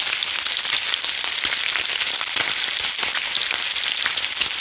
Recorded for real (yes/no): yes